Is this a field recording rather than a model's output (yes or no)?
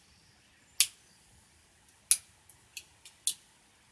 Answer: yes